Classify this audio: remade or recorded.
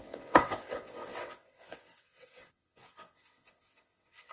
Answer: remade